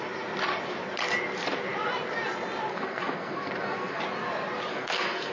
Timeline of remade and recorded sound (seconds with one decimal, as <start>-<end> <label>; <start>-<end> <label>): 0.0-2.7 recorded; 2.7-4.0 remade; 4.0-4.7 recorded; 4.7-5.3 remade